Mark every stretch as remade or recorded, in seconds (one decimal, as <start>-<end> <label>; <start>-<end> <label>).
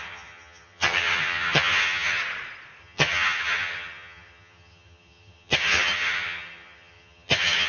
0.0-2.2 remade; 2.2-2.8 recorded; 2.8-7.7 remade